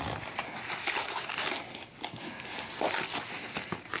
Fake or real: real